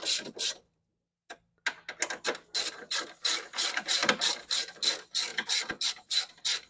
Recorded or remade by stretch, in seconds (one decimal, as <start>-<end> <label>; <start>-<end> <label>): 0.0-0.9 remade; 0.9-2.7 recorded; 2.7-5.3 remade; 5.3-5.9 recorded; 5.9-6.7 remade